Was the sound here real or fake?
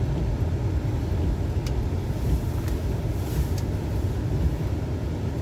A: real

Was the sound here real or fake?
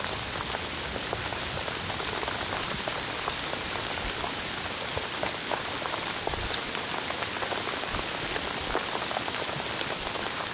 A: real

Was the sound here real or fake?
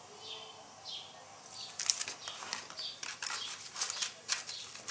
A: real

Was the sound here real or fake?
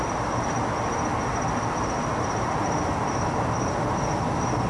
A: real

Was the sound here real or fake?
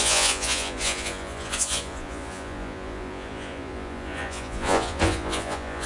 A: fake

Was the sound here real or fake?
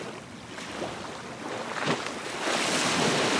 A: real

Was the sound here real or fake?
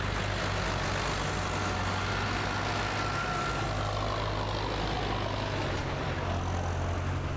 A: real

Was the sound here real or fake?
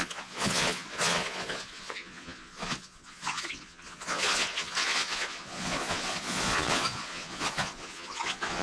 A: fake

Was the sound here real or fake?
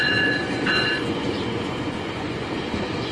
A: fake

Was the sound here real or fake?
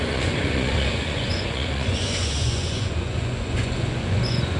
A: fake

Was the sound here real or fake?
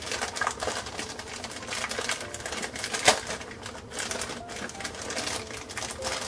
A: real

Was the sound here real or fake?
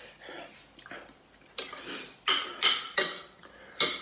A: real